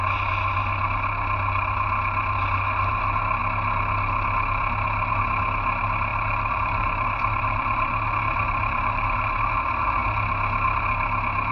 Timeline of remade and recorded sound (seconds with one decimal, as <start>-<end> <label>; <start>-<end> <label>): 0.0-6.1 recorded; 6.1-9.6 remade; 9.6-11.5 recorded